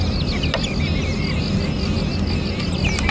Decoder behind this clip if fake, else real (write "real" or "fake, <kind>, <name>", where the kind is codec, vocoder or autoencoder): real